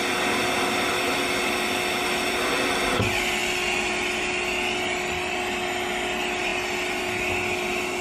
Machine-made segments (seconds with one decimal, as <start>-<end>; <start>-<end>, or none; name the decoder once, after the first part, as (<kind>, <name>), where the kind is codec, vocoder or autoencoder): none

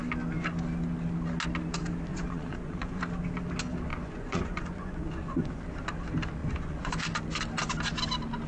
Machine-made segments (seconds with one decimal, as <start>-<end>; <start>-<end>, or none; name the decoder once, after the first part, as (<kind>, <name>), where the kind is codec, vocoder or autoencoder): 2.1-3.0 (vocoder, Vocos); 3.9-5.6; 6.4-6.9

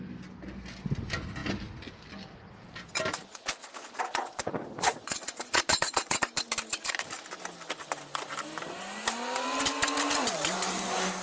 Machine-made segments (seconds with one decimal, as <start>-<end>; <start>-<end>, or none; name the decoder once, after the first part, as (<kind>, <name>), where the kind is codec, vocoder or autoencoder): 3.6-6.2 (vocoder, Vocos)

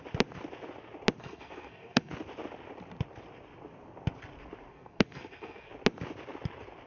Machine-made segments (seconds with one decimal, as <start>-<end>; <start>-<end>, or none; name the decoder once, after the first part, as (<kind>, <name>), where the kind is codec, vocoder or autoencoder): 1.2-2.1 (codec, SNAC); 4.7-5.7